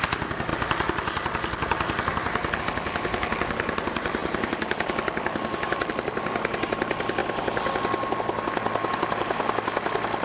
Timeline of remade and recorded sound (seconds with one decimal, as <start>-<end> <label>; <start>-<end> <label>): 0.0-10.2 recorded